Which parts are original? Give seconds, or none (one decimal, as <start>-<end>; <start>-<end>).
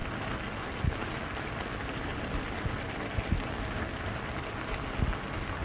0.0-5.6